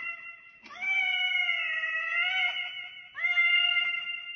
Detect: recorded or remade recorded